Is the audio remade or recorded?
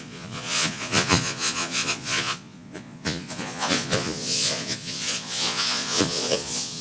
remade